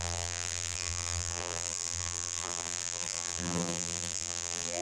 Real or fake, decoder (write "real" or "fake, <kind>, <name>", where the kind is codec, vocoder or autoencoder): fake, vocoder, BigVGAN v2